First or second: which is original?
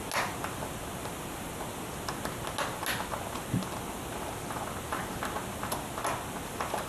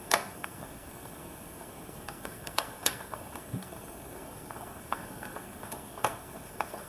first